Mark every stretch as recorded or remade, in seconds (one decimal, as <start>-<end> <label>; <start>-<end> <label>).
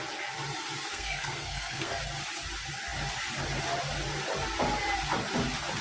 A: 0.0-0.9 recorded; 0.9-2.0 remade; 2.0-5.8 recorded